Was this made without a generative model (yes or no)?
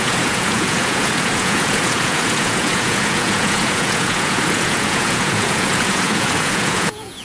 no